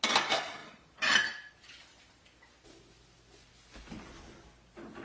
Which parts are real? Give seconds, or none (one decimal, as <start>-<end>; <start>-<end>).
0.0-0.6; 3.5-5.0